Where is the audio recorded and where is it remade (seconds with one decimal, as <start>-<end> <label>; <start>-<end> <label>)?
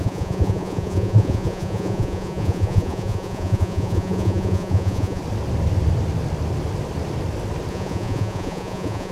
0.0-5.2 remade; 5.2-7.7 recorded; 7.7-9.1 remade